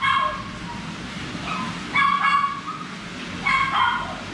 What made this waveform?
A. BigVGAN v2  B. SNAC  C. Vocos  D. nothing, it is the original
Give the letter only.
D